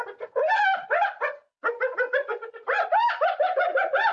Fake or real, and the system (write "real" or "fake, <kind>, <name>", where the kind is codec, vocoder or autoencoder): real